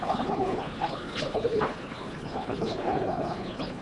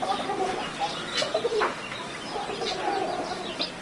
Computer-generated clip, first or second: first